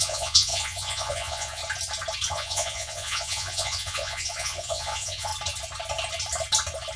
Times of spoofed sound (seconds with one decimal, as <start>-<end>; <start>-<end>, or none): 0.0-1.6; 2.3-5.3